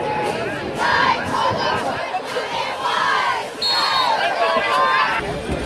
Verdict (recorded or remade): recorded